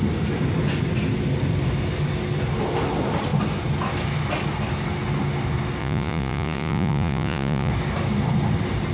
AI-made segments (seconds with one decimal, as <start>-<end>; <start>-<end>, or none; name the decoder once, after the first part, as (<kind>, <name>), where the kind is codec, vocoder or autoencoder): 5.8-7.7 (vocoder, Vocos)